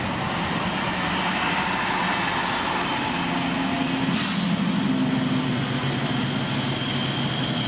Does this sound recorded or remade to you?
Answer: recorded